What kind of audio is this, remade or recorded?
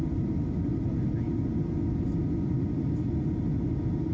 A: recorded